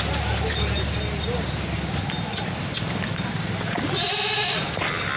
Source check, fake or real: real